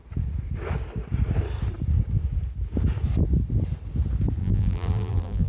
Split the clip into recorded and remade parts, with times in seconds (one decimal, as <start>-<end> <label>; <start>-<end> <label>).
0.0-4.4 recorded; 4.4-5.5 remade